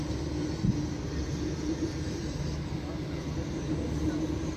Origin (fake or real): real